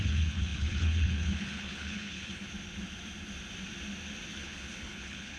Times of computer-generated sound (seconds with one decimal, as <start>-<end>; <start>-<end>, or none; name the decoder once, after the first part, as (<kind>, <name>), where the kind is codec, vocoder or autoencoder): 0.0-2.3 (codec, HILCodec); 4.3-5.4